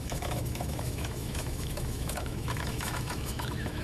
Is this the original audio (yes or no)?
no